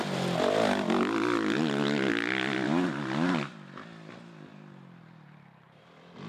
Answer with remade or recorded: recorded